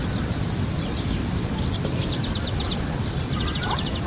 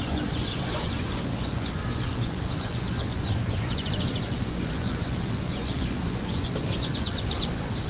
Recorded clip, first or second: first